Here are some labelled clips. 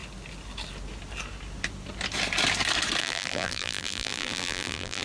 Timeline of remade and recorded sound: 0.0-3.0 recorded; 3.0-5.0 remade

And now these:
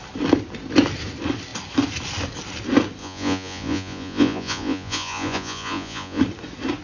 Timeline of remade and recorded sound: 0.0-3.0 recorded; 3.0-6.2 remade; 6.2-6.8 recorded

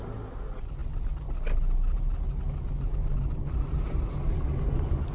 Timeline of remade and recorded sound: 0.0-5.1 recorded

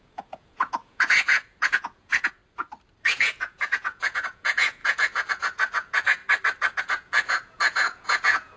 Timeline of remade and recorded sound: 0.0-2.4 remade; 2.4-3.0 recorded; 3.0-6.2 remade; 6.2-6.8 recorded; 6.8-8.6 remade

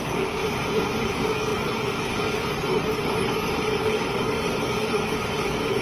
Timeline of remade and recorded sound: 0.0-0.4 remade; 0.4-1.0 recorded; 1.0-5.8 remade